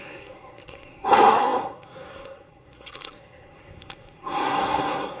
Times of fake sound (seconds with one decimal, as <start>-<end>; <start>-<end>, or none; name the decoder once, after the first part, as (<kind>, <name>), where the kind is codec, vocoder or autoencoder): 0.0-5.2 (codec, SNAC)